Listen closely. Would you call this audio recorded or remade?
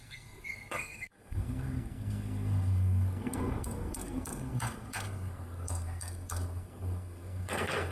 remade